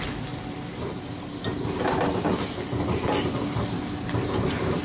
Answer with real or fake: real